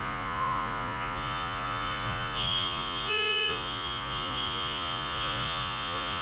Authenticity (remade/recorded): remade